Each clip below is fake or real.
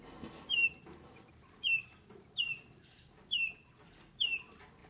real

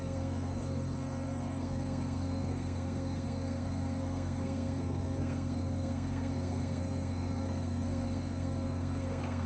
fake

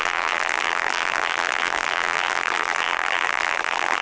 fake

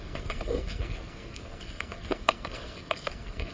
fake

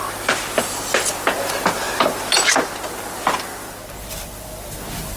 real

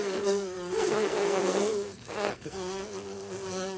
fake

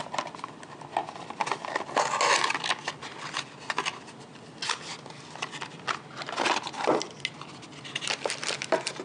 real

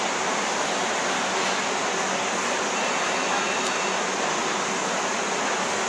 real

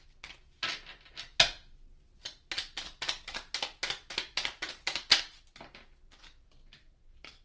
real